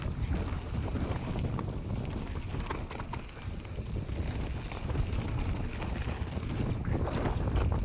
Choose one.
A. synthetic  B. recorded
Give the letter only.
B